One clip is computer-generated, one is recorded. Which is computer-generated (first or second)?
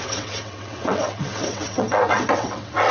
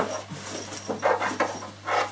first